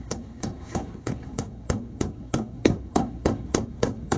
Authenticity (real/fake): fake